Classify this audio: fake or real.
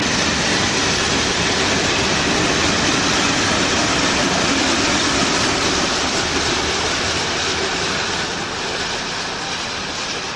fake